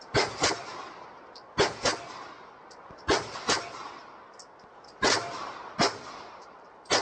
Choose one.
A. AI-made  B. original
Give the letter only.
B